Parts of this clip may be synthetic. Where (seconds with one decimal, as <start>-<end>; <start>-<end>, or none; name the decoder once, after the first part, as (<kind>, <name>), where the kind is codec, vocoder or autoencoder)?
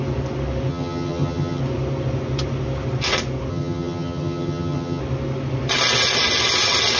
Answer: 0.7-1.6 (vocoder, HiFi-GAN); 3.5-5.0